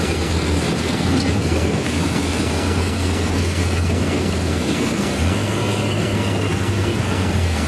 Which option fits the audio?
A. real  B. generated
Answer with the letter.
B